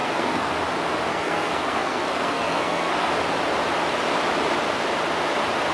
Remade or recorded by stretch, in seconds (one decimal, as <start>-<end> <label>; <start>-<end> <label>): 0.0-0.5 remade; 0.5-1.1 recorded; 1.1-3.1 remade; 3.1-5.7 recorded